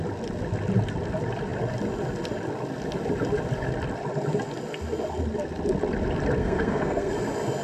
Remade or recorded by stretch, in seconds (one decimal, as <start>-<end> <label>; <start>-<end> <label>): 0.0-6.4 recorded; 6.4-7.1 remade; 7.1-7.6 recorded

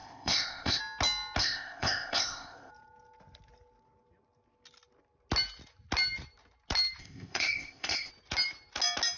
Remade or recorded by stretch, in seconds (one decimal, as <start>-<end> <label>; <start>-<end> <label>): 0.0-0.8 remade; 0.8-1.4 recorded; 1.4-2.7 remade; 2.7-7.0 recorded; 7.0-8.1 remade; 8.1-9.2 recorded

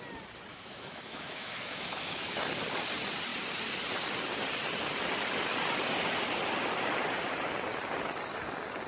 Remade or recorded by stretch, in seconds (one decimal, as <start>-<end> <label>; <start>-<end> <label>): 0.0-0.5 recorded; 0.5-2.4 remade; 2.4-8.9 recorded

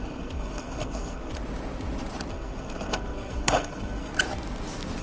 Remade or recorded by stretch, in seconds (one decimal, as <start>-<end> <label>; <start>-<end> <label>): 0.0-1.3 remade; 1.3-2.3 recorded; 2.3-4.1 remade; 4.1-5.0 recorded

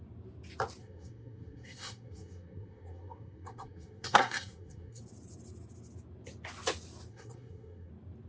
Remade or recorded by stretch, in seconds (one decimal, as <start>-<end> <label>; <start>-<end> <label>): 0.0-0.8 recorded; 0.8-5.0 remade; 5.0-7.1 recorded; 7.1-7.9 remade; 7.9-8.3 recorded